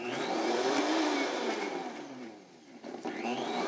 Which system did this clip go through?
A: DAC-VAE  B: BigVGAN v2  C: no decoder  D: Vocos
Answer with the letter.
B